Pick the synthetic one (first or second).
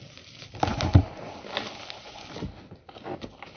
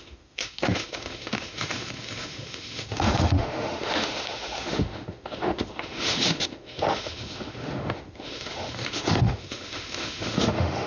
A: second